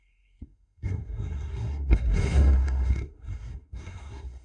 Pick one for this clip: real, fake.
fake